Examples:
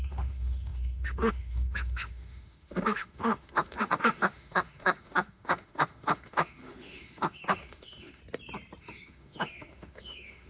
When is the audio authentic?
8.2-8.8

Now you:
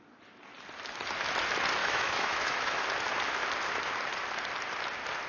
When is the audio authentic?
0.0-1.8; 2.8-5.3

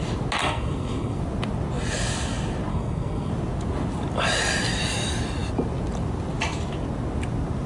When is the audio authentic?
0.0-0.4; 1.2-2.7; 3.3-7.7

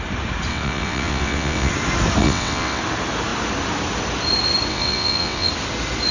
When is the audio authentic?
0.0-0.5; 1.7-2.2; 2.8-4.7; 5.5-6.1

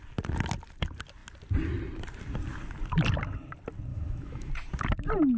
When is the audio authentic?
0.0-3.9; 4.5-5.4

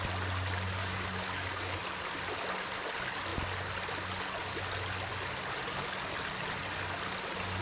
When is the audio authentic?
0.0-0.8; 1.8-7.6